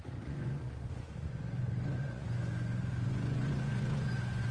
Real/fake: fake